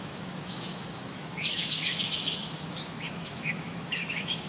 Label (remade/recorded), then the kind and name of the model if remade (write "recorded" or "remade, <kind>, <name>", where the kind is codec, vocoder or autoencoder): remade, autoencoder, DAC-VAE